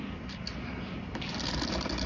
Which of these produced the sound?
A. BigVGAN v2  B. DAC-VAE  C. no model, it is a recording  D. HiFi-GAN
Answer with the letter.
A